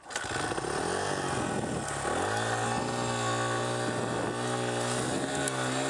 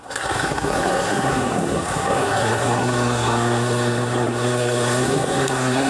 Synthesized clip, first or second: second